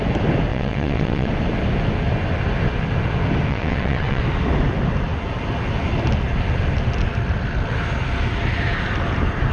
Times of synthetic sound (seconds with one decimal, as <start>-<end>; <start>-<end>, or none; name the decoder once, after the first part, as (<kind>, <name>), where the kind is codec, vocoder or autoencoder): 0.5-1.3 (vocoder, WaveNeXt); 3.5-4.2